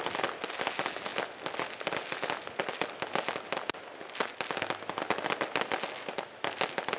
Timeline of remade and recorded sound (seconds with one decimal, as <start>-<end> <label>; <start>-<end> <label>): 0.0-7.0 recorded